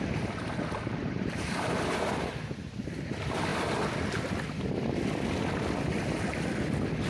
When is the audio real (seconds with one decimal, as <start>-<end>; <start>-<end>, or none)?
0.0-1.0; 2.3-7.1